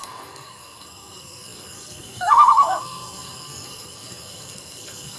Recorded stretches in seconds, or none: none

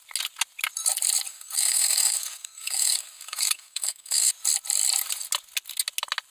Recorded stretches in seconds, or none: 0.0-1.3; 4.3-6.3

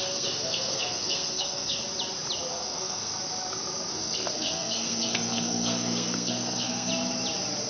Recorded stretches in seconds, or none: 1.8-2.5; 3.1-3.9; 6.9-7.7

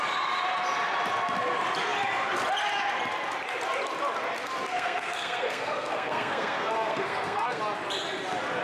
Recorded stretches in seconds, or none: 0.0-4.7; 7.6-8.6

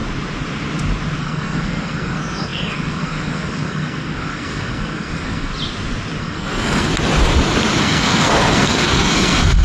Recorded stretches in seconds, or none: 0.0-1.2; 5.5-6.2; 6.9-7.8

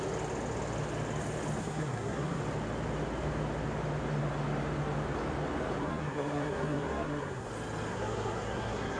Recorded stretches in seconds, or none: 0.0-1.6; 2.4-5.8; 7.5-7.9

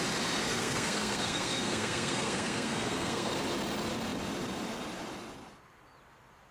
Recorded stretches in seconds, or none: 0.0-0.4; 3.3-6.5

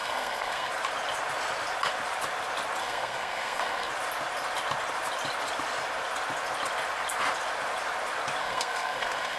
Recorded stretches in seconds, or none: 0.7-2.8; 3.9-8.4